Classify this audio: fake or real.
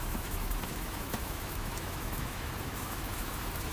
fake